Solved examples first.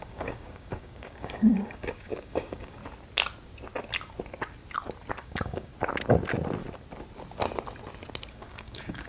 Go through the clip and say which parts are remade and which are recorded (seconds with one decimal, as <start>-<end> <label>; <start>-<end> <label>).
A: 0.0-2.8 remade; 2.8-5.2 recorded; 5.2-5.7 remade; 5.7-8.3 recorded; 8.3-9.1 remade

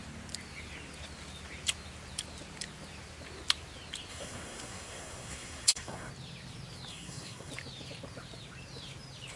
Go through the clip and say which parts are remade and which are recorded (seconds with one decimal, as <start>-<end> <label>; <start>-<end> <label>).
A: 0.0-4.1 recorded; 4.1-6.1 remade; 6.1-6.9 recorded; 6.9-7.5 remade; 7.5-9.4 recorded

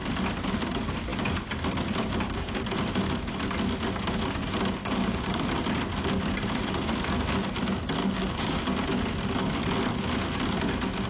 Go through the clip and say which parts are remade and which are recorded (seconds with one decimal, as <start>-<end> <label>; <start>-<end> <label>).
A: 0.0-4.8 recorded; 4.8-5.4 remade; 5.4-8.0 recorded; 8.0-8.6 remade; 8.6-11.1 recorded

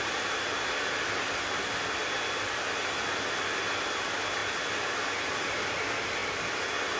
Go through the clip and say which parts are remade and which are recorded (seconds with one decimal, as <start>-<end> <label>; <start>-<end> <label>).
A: 0.0-7.0 recorded

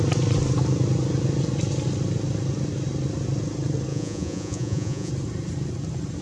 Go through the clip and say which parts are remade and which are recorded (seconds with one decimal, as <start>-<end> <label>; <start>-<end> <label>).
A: 0.0-3.9 recorded; 3.9-5.1 remade; 5.1-6.2 recorded

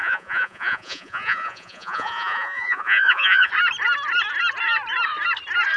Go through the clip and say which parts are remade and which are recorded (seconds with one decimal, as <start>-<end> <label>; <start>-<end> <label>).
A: 0.0-3.5 remade; 3.5-5.8 recorded

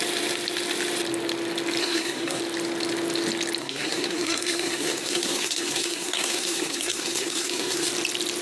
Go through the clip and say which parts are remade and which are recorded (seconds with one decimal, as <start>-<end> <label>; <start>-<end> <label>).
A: 0.0-1.8 recorded; 1.8-2.4 remade; 2.4-3.6 recorded; 3.6-7.9 remade; 7.9-8.4 recorded